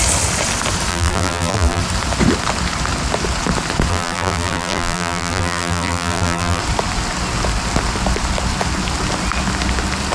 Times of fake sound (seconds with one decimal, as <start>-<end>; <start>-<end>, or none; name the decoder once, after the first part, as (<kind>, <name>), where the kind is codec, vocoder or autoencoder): 0.9-1.8 (vocoder, BigVGAN v2); 3.9-6.6